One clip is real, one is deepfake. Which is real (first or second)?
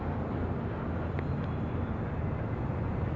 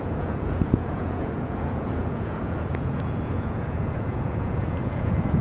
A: first